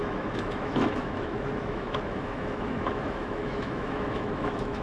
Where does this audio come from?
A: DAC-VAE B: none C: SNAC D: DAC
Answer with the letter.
A